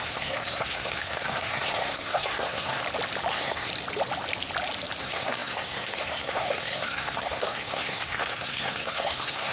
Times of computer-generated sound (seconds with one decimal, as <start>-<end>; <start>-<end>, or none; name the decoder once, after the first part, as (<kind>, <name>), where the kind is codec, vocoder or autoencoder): 0.0-2.8 (codec, SNAC); 3.3-3.7; 5.0-9.5